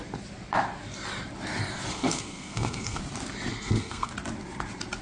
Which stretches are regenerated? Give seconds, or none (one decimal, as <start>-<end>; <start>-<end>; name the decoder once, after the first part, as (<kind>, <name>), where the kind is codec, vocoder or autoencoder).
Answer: 1.9-3.0 (codec, SNAC); 3.5-4.1